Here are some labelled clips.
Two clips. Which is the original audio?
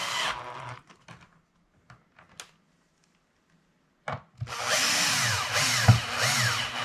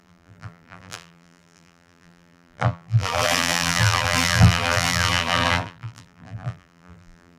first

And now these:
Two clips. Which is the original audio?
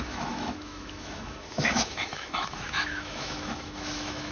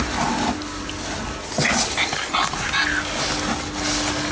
second